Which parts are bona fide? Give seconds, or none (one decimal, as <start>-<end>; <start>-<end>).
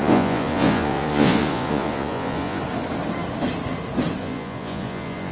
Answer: 2.6-4.2